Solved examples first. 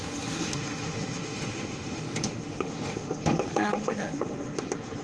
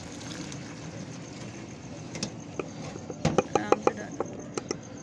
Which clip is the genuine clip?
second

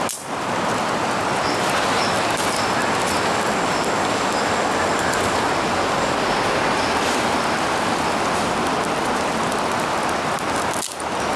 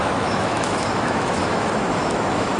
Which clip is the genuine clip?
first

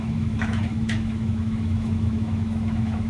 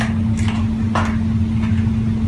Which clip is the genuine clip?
second